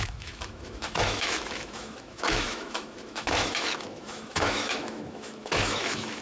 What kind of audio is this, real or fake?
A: fake